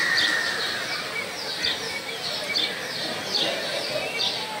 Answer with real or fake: real